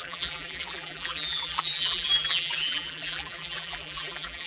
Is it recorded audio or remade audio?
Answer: remade